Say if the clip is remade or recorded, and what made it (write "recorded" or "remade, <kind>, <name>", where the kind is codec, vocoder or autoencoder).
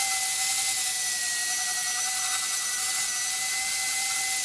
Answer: recorded